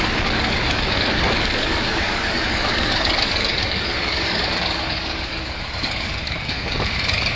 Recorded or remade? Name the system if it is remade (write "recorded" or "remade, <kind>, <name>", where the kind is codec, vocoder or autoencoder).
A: remade, codec, DAC